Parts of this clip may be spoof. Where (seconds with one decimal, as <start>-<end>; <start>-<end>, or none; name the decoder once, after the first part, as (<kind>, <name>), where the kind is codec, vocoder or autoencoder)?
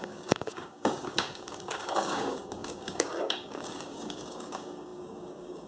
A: 0.0-5.7 (codec, DAC)